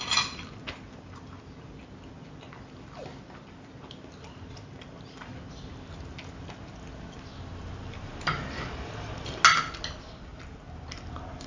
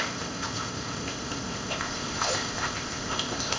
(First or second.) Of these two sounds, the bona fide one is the first